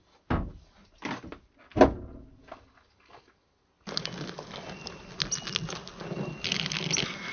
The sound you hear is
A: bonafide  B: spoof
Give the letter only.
A